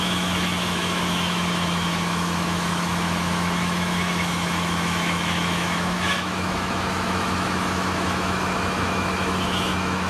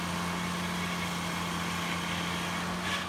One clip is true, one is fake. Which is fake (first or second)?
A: first